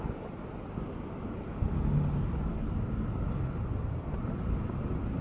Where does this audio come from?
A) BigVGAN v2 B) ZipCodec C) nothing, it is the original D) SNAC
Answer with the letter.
C